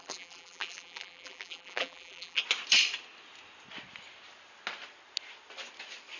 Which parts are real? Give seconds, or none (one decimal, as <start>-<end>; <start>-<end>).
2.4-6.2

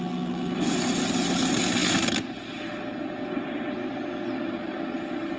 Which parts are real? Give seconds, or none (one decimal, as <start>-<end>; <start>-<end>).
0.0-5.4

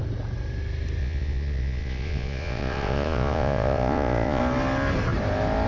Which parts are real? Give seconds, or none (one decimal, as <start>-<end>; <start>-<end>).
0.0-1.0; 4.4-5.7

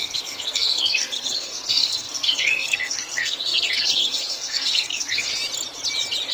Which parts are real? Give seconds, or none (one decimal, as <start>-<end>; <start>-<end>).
5.3-6.3

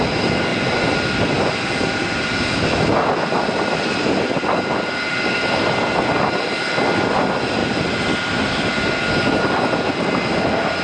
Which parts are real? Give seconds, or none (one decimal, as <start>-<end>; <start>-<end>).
0.0-10.8

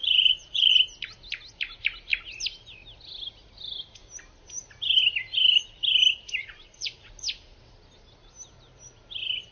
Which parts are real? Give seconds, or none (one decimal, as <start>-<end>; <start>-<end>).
0.7-6.4; 7.1-9.5